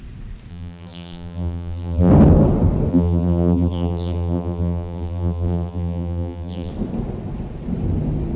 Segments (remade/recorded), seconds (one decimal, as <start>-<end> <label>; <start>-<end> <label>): 0.0-0.5 recorded; 0.5-2.1 remade; 2.1-2.9 recorded; 2.9-6.7 remade; 6.7-8.4 recorded